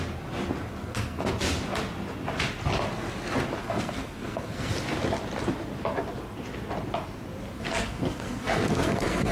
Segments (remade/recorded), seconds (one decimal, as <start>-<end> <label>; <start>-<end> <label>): 0.0-0.8 recorded; 0.8-1.3 remade; 1.3-3.6 recorded; 3.6-4.7 remade; 4.7-7.5 recorded; 7.5-9.3 remade